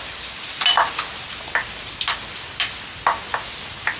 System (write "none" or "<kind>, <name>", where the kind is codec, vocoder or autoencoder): none